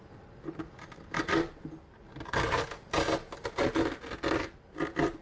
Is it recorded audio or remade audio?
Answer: recorded